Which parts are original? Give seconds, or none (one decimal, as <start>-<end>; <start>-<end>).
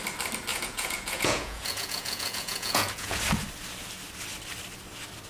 0.0-0.5; 3.2-5.3